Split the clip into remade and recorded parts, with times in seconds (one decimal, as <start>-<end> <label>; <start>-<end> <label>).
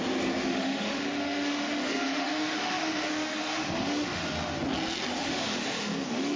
0.0-0.4 recorded; 0.4-4.2 remade; 4.2-5.2 recorded; 5.2-6.4 remade